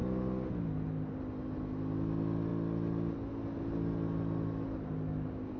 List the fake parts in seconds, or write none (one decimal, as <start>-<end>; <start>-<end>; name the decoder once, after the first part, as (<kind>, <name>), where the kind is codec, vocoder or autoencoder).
none